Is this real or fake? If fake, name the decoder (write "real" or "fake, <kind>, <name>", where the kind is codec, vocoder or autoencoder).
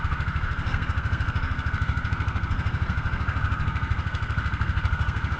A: fake, codec, SNAC